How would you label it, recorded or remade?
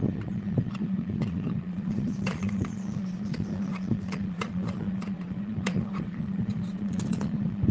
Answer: remade